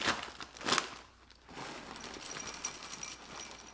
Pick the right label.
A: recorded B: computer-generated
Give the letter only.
A